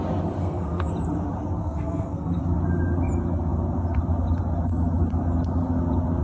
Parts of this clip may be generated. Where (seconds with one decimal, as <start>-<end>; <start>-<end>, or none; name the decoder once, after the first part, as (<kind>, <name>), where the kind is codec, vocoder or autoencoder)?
0.4-0.9 (codec, SNAC); 1.6-2.4